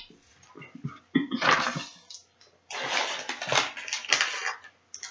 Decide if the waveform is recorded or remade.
recorded